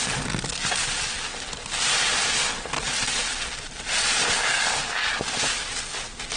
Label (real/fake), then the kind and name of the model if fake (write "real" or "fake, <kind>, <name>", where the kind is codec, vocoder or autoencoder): real